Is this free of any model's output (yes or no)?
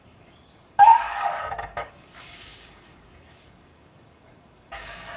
no